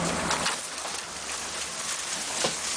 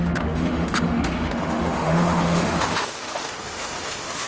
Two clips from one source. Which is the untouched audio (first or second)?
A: first